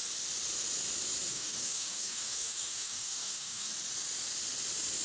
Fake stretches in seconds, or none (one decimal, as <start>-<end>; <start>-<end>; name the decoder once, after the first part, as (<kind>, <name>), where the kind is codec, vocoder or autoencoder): 1.3-3.7 (codec, DAC)